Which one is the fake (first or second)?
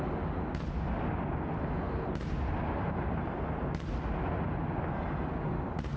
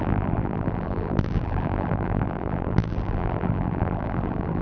second